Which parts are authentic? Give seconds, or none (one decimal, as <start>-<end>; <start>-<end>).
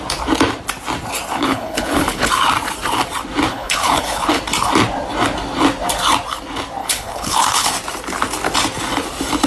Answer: 0.0-1.3; 2.3-3.5; 4.4-6.8; 7.7-9.5